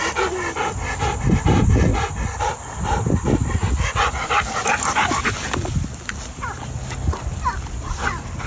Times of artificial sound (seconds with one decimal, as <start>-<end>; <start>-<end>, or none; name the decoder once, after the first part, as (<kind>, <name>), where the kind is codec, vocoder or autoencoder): none